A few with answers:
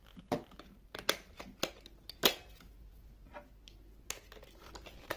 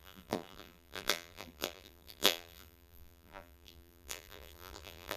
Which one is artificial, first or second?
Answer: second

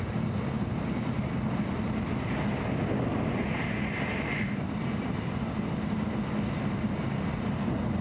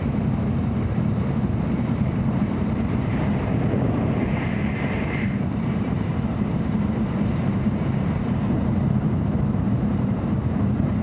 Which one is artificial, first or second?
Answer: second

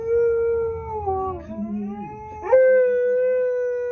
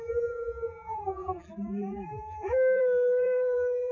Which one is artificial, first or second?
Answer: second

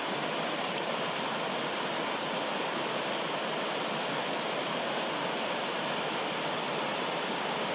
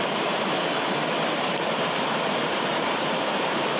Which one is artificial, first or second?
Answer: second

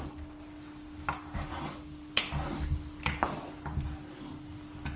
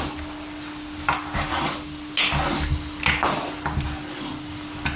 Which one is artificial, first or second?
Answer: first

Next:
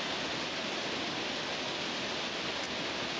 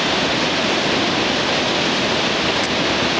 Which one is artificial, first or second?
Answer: second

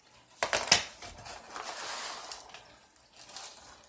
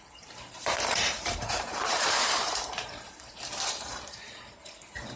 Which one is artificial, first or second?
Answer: second